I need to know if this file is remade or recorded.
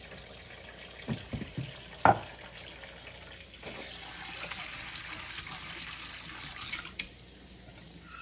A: recorded